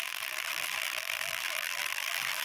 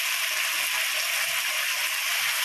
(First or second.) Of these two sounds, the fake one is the first